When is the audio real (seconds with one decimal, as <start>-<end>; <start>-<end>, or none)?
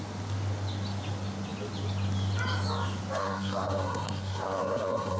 0.0-3.2